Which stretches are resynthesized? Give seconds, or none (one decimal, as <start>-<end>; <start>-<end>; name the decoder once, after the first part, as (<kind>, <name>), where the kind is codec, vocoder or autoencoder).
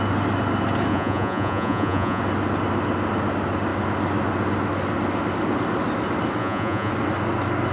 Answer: 0.9-2.2 (vocoder, Vocos); 6.4-6.9